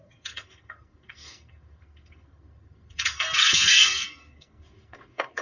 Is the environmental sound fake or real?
fake